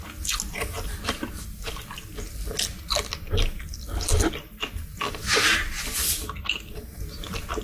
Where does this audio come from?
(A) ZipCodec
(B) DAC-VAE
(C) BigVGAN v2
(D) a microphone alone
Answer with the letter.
D